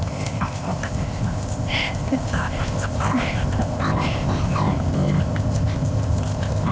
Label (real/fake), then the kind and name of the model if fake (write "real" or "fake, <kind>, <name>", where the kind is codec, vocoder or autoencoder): fake, codec, ZipCodec